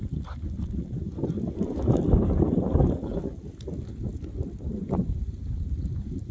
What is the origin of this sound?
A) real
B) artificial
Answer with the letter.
A